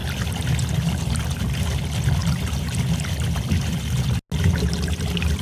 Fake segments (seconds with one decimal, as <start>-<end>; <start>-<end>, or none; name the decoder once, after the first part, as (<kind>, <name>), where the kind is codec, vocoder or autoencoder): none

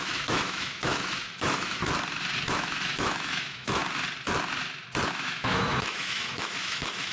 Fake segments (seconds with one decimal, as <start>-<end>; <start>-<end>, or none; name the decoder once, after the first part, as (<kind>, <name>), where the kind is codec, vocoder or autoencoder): 0.0-1.8 (autoencoder, DAC-VAE); 2.5-3.8; 5.1-7.1

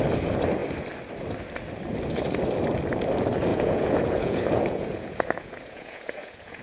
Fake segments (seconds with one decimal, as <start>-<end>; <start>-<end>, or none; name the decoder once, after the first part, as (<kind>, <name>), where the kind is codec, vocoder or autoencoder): 3.5-6.6 (vocoder, Vocos)

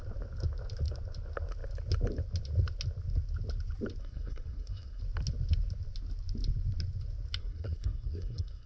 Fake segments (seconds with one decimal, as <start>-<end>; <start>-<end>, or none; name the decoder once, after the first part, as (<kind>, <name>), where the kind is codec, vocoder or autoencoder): 4.0-5.0 (codec, SNAC); 7.4-8.7

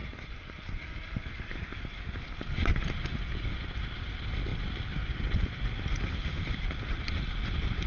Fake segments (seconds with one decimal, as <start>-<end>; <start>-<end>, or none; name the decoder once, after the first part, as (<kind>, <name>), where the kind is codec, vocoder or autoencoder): none

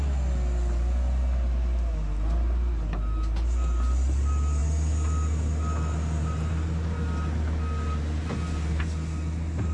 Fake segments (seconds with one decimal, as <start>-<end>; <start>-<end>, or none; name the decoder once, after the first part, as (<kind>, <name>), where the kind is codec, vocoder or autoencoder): none

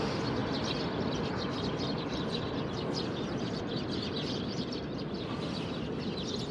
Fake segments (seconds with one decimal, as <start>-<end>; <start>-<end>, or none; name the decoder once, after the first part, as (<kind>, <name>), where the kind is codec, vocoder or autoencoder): 0.4-4.3 (vocoder, BigVGAN v2)